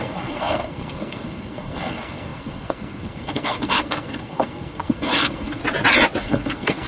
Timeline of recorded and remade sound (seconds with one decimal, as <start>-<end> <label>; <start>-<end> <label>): 0.0-5.6 remade; 5.6-6.2 recorded; 6.2-6.9 remade